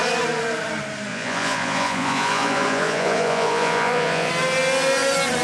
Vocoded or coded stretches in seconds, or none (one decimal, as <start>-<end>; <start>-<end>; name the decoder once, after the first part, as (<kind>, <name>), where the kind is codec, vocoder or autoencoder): 1.1-4.3 (vocoder, Vocos)